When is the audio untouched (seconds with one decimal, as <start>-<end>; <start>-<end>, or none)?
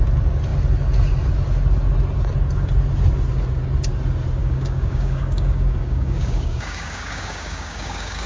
0.0-4.4